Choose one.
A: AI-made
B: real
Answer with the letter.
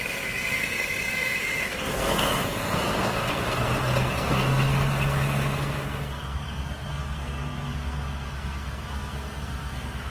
A